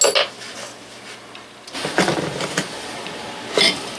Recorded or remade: recorded